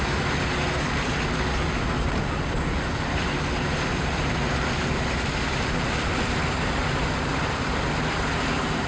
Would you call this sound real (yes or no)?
yes